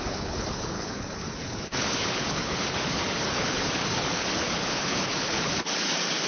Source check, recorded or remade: remade